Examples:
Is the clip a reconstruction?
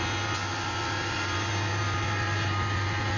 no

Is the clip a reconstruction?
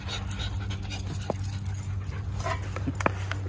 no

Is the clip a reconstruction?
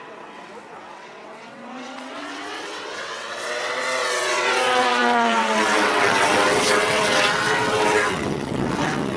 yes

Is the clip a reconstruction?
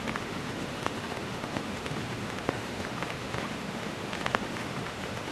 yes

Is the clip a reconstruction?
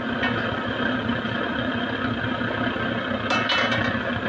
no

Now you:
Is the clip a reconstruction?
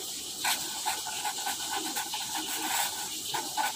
no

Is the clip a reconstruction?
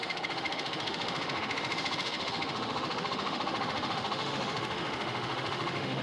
yes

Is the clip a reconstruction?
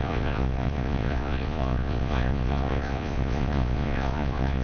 yes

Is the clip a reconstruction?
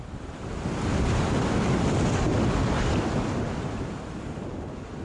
no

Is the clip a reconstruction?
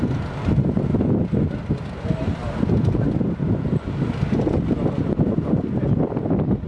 no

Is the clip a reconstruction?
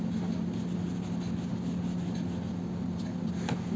no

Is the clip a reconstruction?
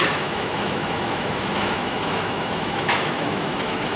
yes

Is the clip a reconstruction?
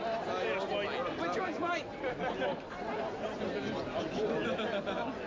no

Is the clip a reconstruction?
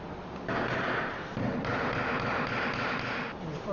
no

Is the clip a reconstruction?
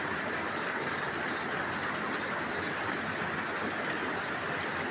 no